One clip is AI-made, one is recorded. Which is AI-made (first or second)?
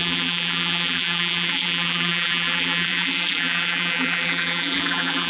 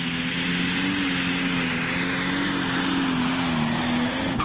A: first